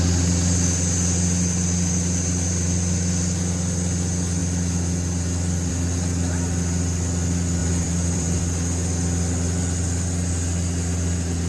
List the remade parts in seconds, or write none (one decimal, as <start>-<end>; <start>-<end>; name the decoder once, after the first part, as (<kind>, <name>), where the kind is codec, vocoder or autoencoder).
7.6-8.4 (vocoder, BigVGAN v2)